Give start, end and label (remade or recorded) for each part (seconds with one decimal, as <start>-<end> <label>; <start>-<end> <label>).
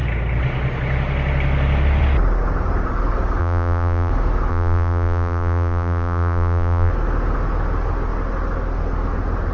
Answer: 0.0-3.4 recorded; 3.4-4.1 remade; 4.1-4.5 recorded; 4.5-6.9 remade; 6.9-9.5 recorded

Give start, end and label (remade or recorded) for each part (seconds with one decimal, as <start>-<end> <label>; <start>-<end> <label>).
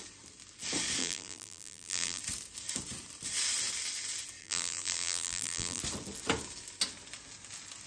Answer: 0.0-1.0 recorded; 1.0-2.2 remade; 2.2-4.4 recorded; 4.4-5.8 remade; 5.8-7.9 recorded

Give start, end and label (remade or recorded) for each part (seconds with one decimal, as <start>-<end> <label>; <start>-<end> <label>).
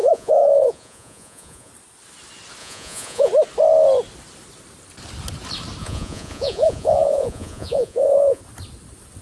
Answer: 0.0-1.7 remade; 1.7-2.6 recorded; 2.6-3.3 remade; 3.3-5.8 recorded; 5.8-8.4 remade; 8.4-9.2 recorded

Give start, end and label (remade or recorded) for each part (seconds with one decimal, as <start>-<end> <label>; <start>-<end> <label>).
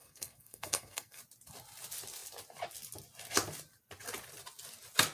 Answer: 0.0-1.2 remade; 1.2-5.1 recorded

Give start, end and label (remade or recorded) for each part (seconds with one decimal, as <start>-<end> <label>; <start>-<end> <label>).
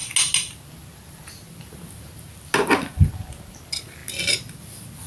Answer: 0.0-5.1 recorded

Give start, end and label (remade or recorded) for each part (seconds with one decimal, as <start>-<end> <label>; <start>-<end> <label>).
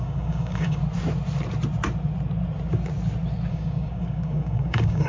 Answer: 0.0-0.8 remade; 0.8-3.5 recorded; 3.5-5.1 remade